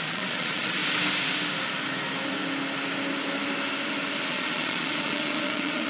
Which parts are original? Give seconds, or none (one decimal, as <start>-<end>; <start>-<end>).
0.8-4.3